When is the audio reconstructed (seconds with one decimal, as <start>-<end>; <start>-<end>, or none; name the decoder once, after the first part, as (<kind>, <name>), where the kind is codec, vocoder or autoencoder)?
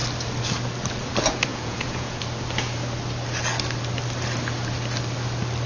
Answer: 1.5-2.2 (vocoder, Vocos)